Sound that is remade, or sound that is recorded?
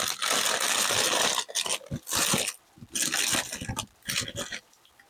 recorded